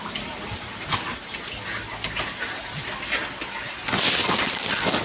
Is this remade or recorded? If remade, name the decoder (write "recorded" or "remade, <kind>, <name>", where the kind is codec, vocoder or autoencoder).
recorded